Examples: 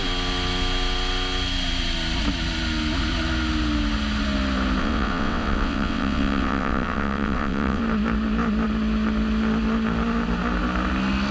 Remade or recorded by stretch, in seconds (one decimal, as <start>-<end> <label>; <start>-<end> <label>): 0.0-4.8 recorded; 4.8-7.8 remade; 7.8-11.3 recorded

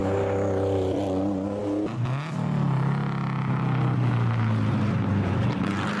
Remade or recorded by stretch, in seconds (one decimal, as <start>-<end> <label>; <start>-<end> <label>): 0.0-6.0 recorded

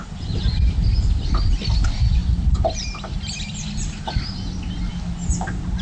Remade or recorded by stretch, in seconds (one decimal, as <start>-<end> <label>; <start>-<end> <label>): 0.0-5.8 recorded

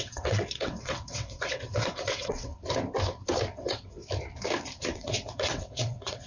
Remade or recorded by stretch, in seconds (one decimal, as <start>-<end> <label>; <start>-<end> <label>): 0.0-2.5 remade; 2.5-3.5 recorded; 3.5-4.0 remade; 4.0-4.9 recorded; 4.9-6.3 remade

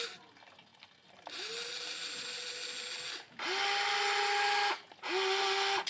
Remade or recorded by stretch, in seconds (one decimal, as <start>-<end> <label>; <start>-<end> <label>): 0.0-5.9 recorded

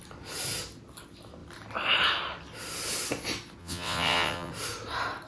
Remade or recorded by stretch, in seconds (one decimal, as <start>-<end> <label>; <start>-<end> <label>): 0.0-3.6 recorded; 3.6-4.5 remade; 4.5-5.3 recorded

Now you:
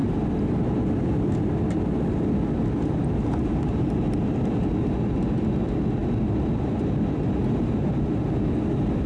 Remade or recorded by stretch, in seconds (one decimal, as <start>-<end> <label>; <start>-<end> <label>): 0.0-9.1 recorded